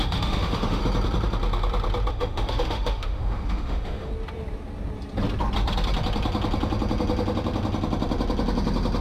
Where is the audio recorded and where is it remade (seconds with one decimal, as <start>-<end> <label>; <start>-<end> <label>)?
0.0-0.8 remade; 0.8-2.1 recorded; 2.1-4.1 remade; 4.1-9.0 recorded